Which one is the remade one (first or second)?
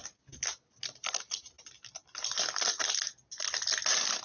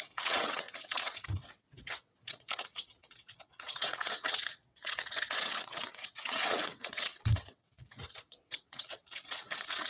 second